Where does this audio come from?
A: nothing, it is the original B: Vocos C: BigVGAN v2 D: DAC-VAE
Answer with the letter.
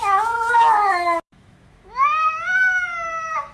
D